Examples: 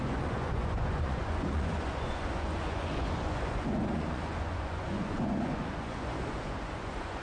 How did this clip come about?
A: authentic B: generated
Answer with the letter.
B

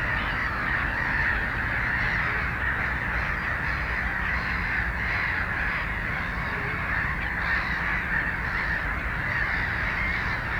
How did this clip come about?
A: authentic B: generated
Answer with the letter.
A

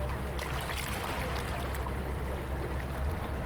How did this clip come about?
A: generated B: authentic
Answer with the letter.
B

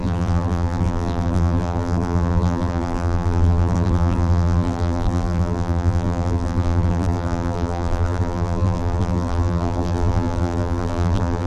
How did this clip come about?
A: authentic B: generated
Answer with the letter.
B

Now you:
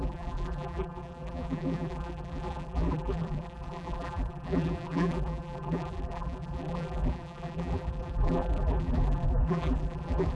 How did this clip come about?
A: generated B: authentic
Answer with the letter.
A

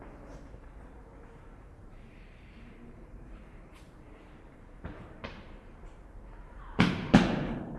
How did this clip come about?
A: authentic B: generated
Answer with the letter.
B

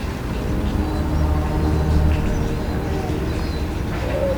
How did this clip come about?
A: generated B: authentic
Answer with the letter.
B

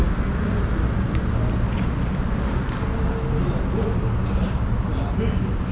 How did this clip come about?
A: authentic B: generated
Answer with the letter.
A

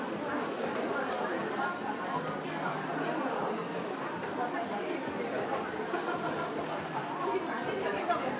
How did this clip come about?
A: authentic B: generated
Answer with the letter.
A